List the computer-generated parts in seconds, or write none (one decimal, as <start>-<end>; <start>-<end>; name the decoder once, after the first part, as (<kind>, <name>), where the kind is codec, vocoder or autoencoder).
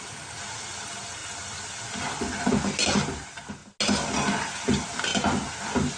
none